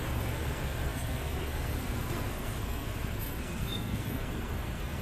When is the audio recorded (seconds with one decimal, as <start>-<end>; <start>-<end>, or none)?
none